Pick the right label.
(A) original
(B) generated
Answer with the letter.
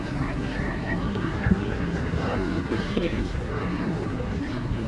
B